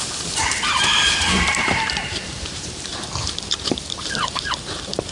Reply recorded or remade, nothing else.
remade